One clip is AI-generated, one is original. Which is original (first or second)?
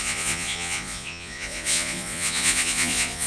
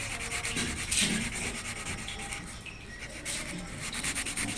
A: second